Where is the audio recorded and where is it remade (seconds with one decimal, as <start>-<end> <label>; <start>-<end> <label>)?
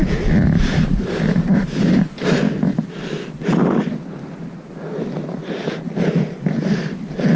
0.0-2.7 remade; 2.7-7.4 recorded